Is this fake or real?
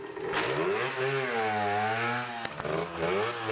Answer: real